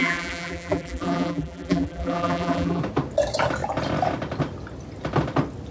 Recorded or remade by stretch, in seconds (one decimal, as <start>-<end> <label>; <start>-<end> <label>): 0.0-2.8 remade; 2.8-5.7 recorded